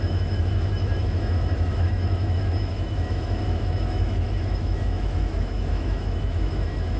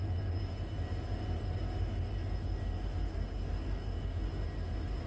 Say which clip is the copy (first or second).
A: first